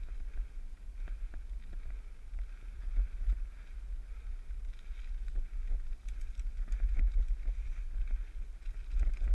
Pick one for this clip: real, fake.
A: real